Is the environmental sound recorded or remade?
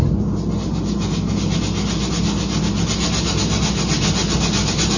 recorded